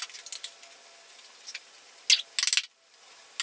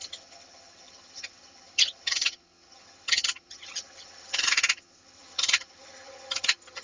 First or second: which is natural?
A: first